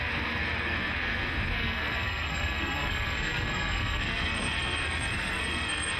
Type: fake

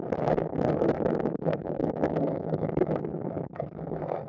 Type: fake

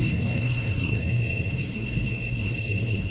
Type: fake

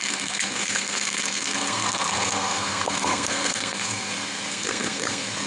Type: fake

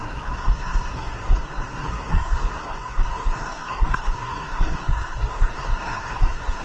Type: fake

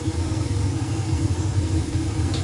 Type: fake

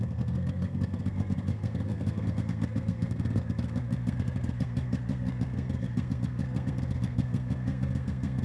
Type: fake